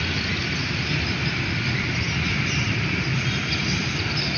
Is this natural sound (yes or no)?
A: no